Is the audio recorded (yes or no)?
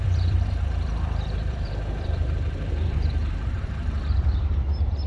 no